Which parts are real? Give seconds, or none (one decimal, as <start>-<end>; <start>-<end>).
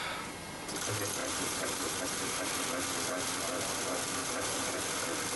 0.0-1.2; 2.5-4.2; 4.8-5.4